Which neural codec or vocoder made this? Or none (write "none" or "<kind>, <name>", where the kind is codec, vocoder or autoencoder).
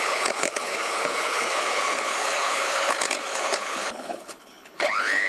codec, HILCodec